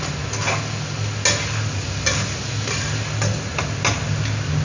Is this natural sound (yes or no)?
yes